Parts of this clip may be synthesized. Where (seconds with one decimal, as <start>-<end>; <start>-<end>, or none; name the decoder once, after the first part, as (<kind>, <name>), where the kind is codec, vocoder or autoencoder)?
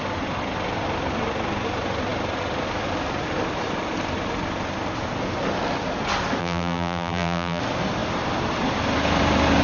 6.4-7.6 (vocoder, BigVGAN v2)